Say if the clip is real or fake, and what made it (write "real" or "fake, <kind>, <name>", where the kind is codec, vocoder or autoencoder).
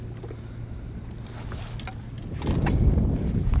real